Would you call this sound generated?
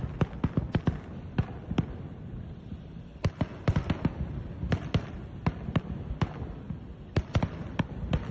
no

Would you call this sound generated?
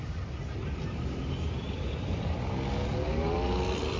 no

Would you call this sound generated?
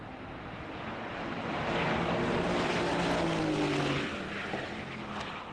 no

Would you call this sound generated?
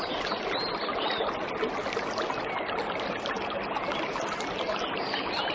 no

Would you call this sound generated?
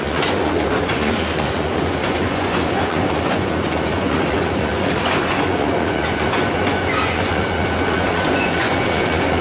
yes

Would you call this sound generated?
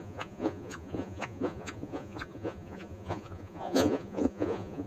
yes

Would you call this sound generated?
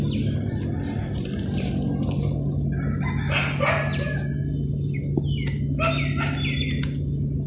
no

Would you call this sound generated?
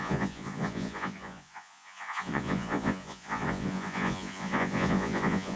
yes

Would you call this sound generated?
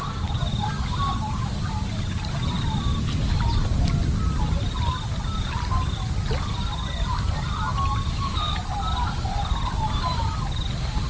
no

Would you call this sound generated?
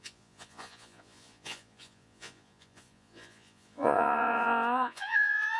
yes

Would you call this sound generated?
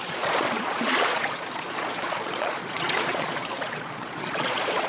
yes